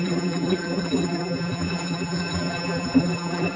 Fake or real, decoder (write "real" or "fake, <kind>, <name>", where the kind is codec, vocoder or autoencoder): fake, vocoder, BigVGAN v2